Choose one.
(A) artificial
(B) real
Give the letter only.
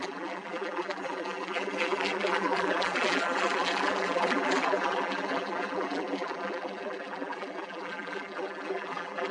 A